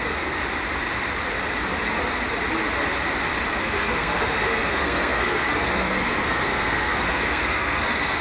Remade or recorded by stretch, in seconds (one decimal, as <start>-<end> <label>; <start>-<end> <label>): 0.0-0.4 remade; 0.4-3.5 recorded; 3.5-8.2 remade